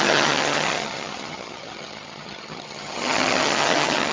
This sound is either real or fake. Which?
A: fake